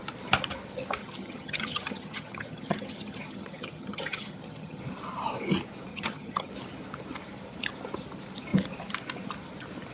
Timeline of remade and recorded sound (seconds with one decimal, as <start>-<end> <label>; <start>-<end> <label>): 0.0-1.0 recorded; 1.0-4.8 remade; 4.8-5.9 recorded; 5.9-6.5 remade; 6.5-9.9 recorded

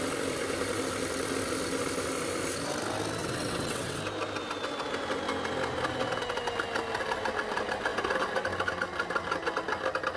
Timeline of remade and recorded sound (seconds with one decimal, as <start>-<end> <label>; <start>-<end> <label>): 0.0-3.2 recorded; 3.2-4.0 remade; 4.0-10.2 recorded